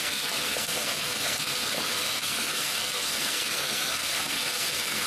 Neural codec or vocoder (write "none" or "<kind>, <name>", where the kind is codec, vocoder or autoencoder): codec, SNAC